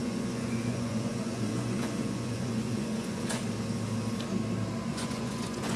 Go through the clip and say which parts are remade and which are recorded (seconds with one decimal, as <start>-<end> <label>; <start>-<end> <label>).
0.0-3.4 remade; 3.4-4.9 recorded; 4.9-5.8 remade

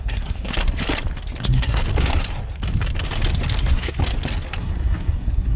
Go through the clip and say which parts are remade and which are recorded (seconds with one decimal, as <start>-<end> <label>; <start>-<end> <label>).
0.0-0.5 remade; 0.5-1.4 recorded; 1.4-1.8 remade; 1.8-3.6 recorded; 3.6-4.0 remade; 4.0-4.6 recorded; 4.6-5.6 remade

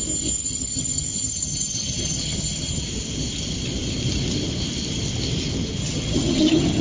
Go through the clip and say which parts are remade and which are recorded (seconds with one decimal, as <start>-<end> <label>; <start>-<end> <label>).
0.0-0.4 recorded; 0.4-2.8 remade; 2.8-5.8 recorded; 5.8-6.8 remade

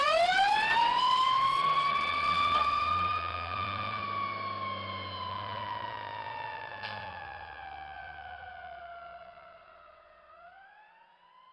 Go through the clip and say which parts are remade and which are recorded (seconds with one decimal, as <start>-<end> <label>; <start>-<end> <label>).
0.0-4.0 remade; 4.0-5.3 recorded; 5.3-11.5 remade

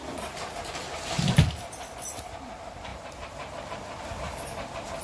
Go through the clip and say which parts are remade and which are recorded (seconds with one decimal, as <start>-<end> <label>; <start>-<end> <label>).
0.0-5.0 recorded

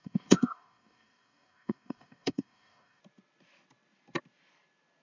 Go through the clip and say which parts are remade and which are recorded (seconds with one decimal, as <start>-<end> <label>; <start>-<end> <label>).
0.0-3.0 remade; 3.0-5.0 recorded

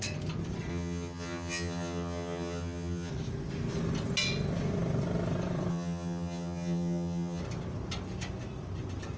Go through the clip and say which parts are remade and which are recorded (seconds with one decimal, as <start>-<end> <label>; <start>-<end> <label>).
0.0-0.7 recorded; 0.7-3.1 remade; 3.1-5.7 recorded; 5.7-7.4 remade; 7.4-9.2 recorded